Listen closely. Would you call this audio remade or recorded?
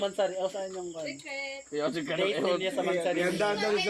recorded